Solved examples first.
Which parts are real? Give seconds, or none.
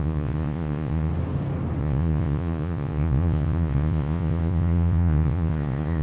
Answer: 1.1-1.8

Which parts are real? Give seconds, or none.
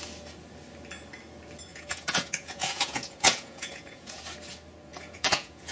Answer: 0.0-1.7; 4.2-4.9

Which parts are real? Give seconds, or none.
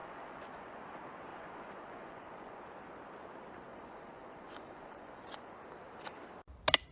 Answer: 0.8-1.3; 2.6-3.7; 5.5-6.9